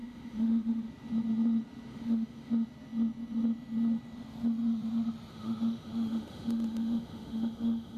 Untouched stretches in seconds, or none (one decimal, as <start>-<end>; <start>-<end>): 0.9-1.9; 2.5-5.3